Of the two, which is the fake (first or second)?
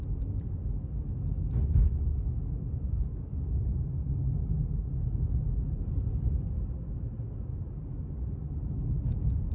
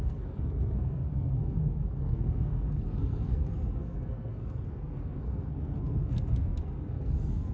second